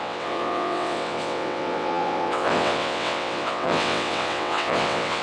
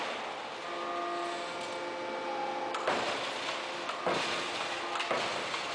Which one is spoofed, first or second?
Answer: first